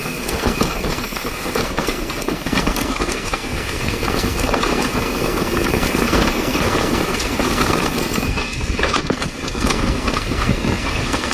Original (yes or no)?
no